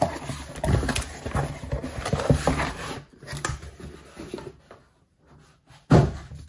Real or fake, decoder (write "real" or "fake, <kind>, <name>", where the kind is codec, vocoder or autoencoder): real